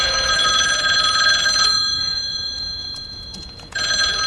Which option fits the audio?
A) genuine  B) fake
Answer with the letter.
B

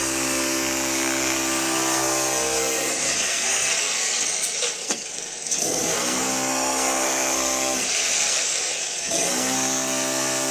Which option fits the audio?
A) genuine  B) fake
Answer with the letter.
B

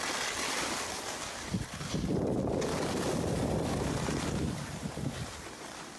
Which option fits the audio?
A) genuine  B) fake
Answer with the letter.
A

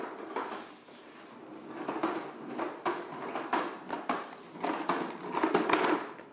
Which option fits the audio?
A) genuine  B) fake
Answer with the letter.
A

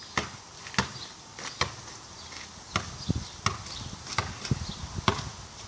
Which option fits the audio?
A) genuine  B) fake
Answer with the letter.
A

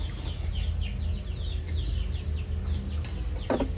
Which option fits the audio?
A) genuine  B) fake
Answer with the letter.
A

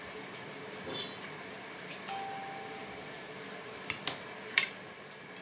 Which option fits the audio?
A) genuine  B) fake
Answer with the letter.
A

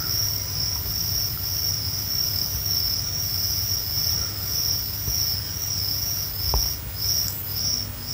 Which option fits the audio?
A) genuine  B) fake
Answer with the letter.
A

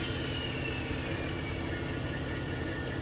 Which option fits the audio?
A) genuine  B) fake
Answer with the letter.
A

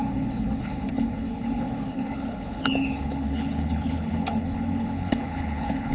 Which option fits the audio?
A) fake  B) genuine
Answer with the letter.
A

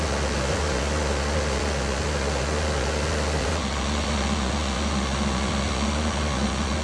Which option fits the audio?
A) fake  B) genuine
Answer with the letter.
A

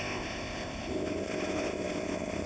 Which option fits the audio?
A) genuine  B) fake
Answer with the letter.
B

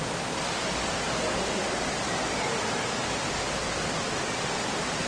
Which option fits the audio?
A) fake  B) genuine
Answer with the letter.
B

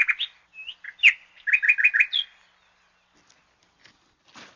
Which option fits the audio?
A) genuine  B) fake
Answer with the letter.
A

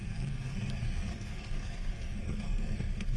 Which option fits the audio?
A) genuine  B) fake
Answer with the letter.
B